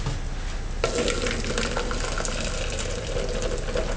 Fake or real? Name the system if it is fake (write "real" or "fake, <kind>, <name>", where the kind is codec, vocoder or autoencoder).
real